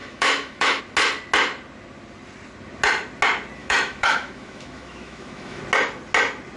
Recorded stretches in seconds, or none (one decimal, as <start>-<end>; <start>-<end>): 0.8-3.6; 5.6-6.6